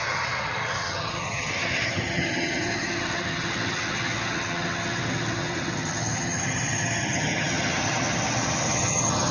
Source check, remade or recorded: remade